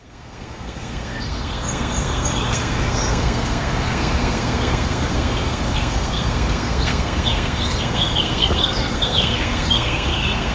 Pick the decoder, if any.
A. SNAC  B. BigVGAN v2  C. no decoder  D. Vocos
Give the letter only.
A